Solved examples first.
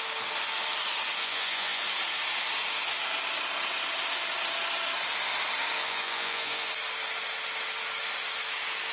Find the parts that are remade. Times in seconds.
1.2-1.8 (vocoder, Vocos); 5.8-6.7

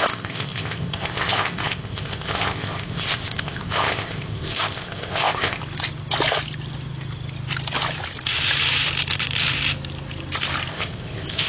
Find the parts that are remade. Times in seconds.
0.0-5.6 (codec, ZipCodec); 10.7-11.5

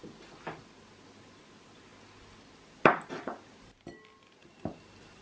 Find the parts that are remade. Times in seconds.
4.4-5.2 (vocoder, BigVGAN v2)